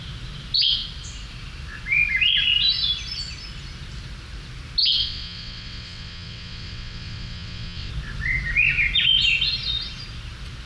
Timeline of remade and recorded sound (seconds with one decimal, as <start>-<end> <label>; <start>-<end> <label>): 0.0-5.0 recorded; 5.0-7.9 remade; 7.9-10.7 recorded